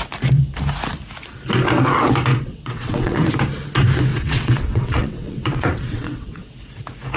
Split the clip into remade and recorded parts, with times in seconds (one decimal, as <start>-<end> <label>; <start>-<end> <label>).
0.0-2.3 recorded; 2.3-3.3 remade; 3.3-4.1 recorded; 4.1-6.5 remade; 6.5-7.2 recorded

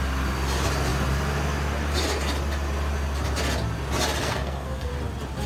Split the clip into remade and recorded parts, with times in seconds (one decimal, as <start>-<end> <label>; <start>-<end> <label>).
0.0-4.2 recorded; 4.2-4.9 remade; 4.9-5.5 recorded

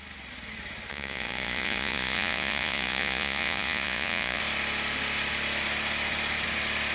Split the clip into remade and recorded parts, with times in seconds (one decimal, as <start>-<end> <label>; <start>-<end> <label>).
0.0-0.9 recorded; 0.9-4.4 remade; 4.4-6.9 recorded

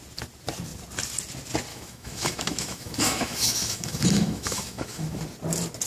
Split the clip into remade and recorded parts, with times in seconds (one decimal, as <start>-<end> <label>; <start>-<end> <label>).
0.0-1.7 recorded; 1.7-5.2 remade; 5.2-5.9 recorded

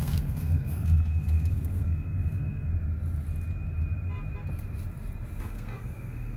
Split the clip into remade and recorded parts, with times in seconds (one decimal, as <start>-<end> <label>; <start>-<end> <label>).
0.0-2.7 remade; 2.7-5.4 recorded; 5.4-6.4 remade

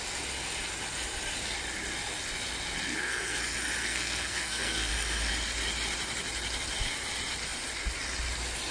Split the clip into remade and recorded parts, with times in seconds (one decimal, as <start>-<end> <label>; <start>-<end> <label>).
0.0-2.9 recorded; 2.9-3.4 remade; 3.4-3.8 recorded; 3.8-4.9 remade; 4.9-8.7 recorded

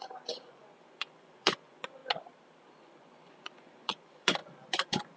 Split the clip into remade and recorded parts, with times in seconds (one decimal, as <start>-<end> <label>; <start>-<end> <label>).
0.0-2.0 remade; 2.0-2.8 recorded; 2.8-5.2 remade

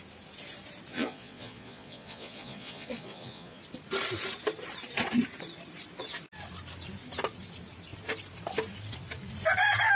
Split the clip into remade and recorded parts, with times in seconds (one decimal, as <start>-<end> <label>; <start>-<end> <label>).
0.0-0.9 recorded; 0.9-3.6 remade; 3.6-10.0 recorded